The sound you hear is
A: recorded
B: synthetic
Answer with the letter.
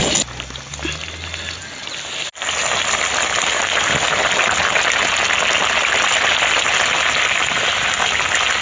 A